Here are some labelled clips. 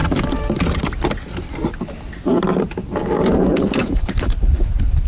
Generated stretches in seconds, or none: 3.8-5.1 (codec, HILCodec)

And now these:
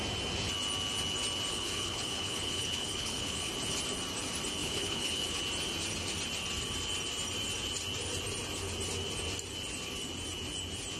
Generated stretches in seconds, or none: 1.5-3.5 (codec, HILCodec); 4.6-5.4